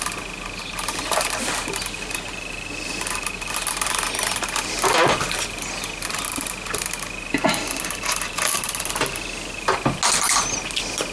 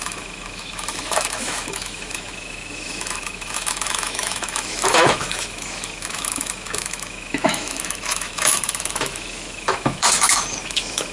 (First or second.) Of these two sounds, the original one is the first